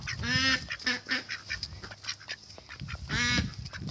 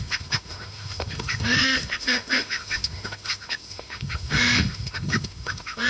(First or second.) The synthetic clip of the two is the second